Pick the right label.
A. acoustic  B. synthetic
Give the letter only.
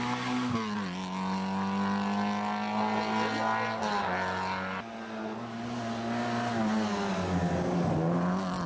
A